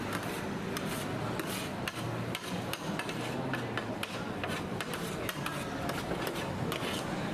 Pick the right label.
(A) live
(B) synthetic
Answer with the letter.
A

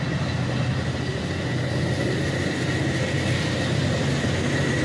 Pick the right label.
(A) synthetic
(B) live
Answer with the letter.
B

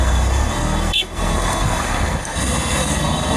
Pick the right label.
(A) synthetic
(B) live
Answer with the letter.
A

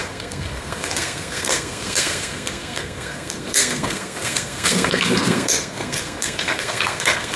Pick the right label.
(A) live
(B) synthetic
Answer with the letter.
B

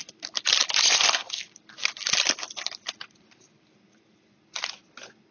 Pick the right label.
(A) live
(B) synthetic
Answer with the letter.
A